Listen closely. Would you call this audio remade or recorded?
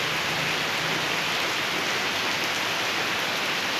recorded